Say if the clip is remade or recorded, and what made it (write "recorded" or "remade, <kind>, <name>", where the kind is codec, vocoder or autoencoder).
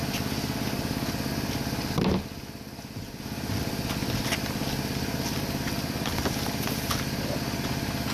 recorded